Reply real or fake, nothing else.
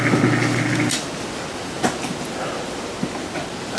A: real